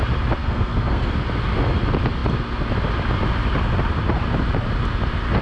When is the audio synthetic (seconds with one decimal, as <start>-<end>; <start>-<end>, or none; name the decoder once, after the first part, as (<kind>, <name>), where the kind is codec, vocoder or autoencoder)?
0.4-1.1 (codec, SNAC)